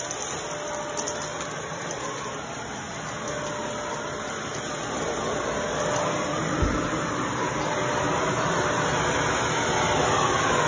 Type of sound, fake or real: real